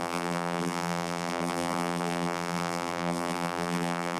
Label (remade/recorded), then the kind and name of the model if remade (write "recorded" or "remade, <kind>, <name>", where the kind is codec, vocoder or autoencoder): remade, vocoder, BigVGAN v2